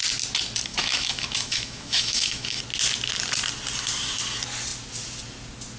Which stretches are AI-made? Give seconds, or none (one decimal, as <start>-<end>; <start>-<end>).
0.7-2.6